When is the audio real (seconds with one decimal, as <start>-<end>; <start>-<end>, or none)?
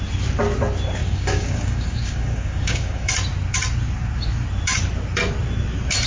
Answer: 0.0-1.0; 3.1-6.1